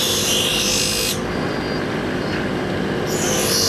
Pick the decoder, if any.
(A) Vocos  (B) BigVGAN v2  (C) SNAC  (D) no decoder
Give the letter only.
D